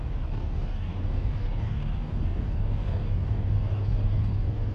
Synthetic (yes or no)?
yes